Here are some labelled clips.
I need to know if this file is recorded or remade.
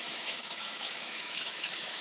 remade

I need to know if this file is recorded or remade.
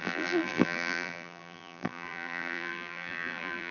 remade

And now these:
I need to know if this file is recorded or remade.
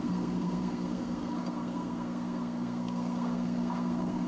remade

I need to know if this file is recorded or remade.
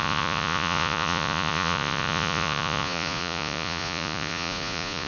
remade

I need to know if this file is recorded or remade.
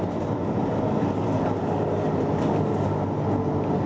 recorded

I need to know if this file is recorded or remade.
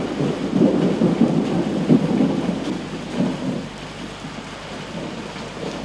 recorded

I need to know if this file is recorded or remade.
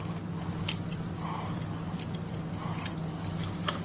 recorded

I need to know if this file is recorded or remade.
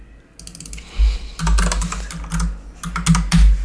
recorded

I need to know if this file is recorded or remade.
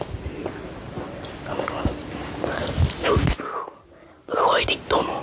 recorded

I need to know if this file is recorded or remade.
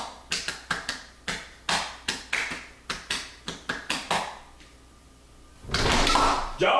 recorded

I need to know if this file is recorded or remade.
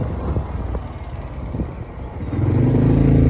recorded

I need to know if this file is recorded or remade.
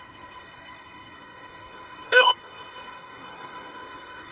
remade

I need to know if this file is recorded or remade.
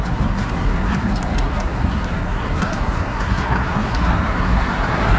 remade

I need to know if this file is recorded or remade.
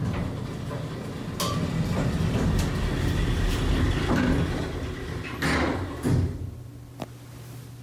recorded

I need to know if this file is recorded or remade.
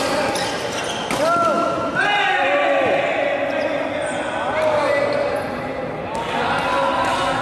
recorded